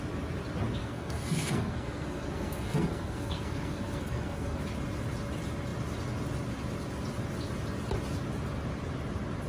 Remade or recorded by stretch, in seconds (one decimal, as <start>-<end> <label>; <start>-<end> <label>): 0.0-0.8 recorded; 0.8-4.6 remade; 4.6-9.5 recorded